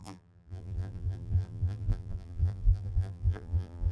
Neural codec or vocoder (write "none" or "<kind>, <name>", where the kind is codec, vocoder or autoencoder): vocoder, BigVGAN v2